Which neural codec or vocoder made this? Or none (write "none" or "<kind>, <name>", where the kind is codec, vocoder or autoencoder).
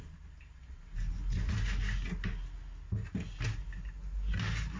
none